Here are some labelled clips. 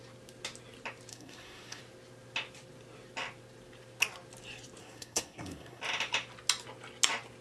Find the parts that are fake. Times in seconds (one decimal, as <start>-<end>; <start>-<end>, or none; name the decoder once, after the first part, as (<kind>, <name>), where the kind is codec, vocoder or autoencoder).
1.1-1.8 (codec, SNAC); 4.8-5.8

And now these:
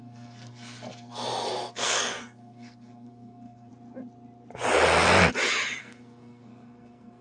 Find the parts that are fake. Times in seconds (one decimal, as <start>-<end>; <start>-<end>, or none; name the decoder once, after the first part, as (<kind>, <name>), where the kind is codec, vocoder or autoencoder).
0.0-3.7 (codec, SNAC); 5.8-7.2

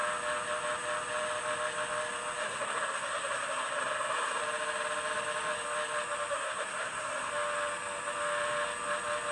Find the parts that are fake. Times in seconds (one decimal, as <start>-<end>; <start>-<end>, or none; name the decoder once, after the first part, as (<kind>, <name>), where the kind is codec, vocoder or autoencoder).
2.4-4.4 (codec, SNAC); 6.3-7.3

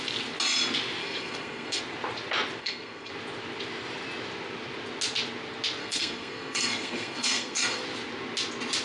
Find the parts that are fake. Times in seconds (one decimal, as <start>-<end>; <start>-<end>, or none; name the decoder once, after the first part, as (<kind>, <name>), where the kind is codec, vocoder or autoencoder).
1.0-1.8 (codec, SNAC); 2.6-3.1; 5.8-7.8

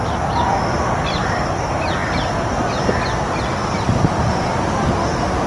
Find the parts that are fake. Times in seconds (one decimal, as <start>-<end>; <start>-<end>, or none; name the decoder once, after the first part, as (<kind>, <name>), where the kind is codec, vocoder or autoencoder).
none

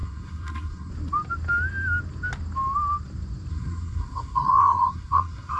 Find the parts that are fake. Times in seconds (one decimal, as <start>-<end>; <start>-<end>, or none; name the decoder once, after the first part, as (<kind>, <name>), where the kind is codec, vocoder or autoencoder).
0.0-0.9 (codec, SNAC); 3.5-5.6